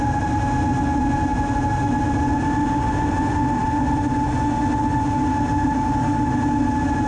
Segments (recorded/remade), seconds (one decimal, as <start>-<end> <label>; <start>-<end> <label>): 0.0-7.1 recorded